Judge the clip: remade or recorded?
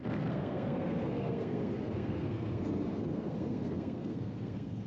remade